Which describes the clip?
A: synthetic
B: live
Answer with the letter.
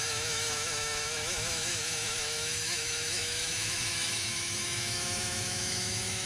A